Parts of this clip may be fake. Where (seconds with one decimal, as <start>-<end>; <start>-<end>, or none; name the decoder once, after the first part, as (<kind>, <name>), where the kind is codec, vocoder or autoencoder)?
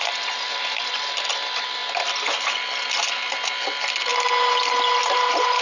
5.0-5.6 (vocoder, BigVGAN v2)